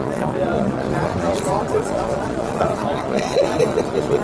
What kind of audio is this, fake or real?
fake